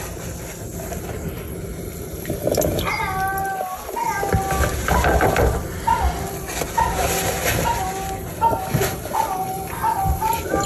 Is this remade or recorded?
recorded